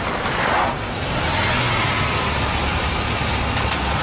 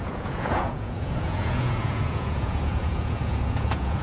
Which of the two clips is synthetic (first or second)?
second